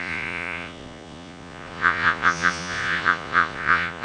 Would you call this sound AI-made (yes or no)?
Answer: yes